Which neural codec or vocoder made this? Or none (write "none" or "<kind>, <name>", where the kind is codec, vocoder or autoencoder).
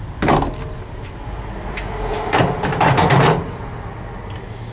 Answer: none